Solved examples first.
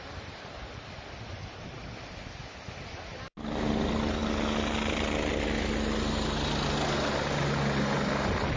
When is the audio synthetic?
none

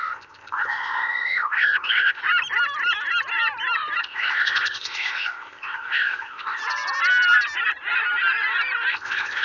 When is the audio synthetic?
0.0-2.2; 4.0-6.6; 8.9-9.4